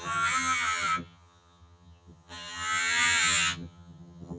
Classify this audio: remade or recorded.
remade